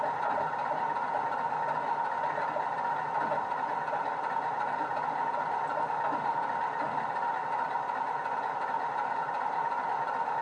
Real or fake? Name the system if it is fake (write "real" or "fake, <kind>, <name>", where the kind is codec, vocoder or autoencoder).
real